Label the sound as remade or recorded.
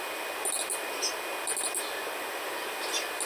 recorded